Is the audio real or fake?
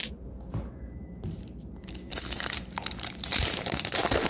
fake